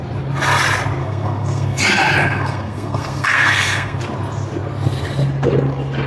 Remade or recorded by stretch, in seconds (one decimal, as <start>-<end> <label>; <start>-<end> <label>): 0.0-1.0 recorded; 1.0-1.8 remade; 1.8-2.2 recorded; 2.2-4.0 remade; 4.0-6.1 recorded